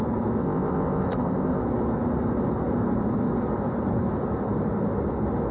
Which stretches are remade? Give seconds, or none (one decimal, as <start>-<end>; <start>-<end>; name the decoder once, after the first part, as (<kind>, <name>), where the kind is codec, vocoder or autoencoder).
0.4-1.6 (codec, ZipCodec)